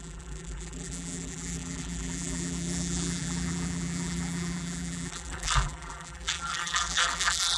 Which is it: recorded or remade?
remade